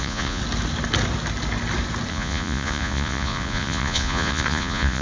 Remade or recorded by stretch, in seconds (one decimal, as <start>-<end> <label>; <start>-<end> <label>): 0.0-0.4 remade; 0.4-2.1 recorded; 2.1-5.0 remade